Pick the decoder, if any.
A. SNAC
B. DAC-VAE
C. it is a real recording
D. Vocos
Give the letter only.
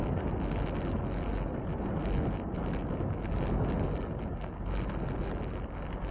C